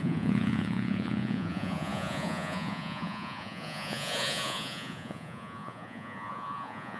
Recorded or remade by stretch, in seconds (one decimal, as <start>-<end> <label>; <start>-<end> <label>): 0.0-7.0 remade